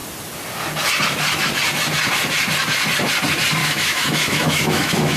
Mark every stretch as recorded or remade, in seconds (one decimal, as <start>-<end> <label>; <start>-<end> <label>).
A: 0.0-3.6 recorded; 3.6-5.2 remade